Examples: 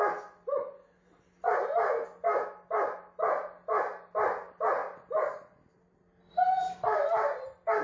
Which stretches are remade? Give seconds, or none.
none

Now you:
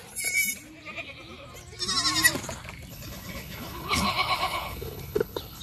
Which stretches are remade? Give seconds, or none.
2.9-5.6 (codec, HILCodec)

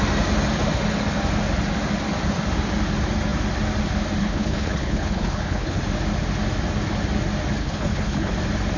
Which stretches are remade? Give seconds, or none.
4.2-5.8 (codec, HILCodec); 7.6-8.3

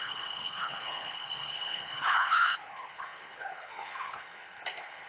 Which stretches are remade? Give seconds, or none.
0.0-5.1 (codec, HILCodec)

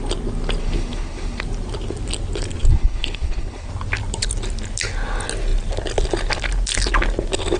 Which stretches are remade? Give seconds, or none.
0.6-1.4 (codec, HILCodec); 2.7-3.7

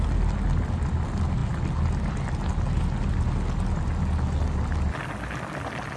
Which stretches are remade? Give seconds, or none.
none